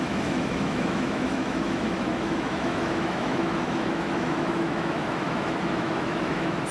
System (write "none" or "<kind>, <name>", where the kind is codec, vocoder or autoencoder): autoencoder, DAC-VAE